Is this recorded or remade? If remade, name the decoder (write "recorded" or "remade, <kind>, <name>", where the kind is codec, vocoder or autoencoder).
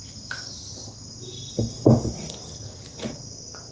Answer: recorded